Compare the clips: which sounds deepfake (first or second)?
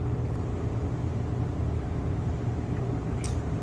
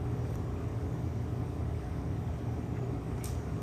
second